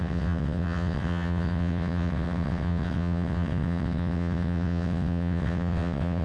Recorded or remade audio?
remade